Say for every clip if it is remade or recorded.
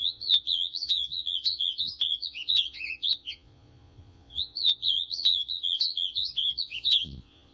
remade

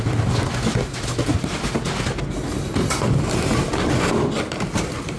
recorded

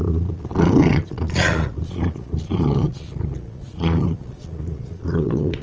remade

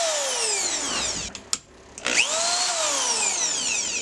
recorded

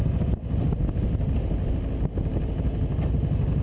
recorded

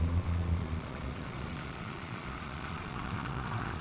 remade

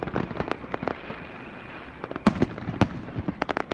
recorded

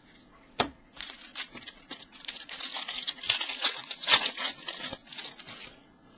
remade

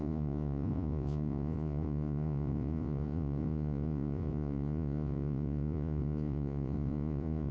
remade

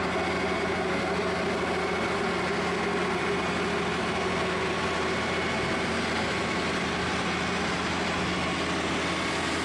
recorded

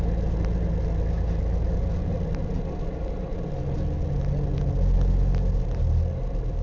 recorded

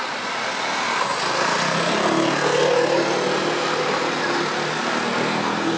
recorded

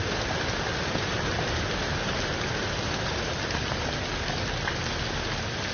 recorded